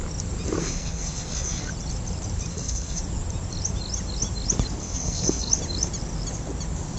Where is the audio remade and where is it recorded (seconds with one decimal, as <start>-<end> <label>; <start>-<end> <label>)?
0.0-0.6 recorded; 0.6-1.7 remade; 1.7-2.5 recorded; 2.5-3.0 remade; 3.0-4.8 recorded; 4.8-5.5 remade; 5.5-7.0 recorded